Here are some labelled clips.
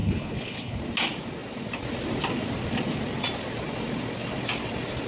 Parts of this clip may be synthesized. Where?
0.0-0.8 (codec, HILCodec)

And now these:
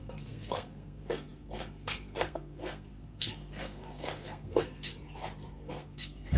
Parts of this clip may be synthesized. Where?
0.0-4.9 (codec, SNAC); 5.5-6.4

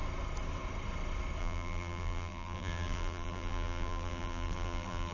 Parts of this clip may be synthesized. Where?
1.4-5.1 (vocoder, BigVGAN v2)

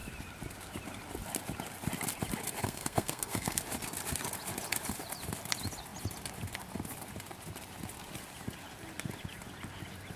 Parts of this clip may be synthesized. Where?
2.6-3.6 (codec, SNAC)